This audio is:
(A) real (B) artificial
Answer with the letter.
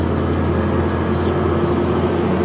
A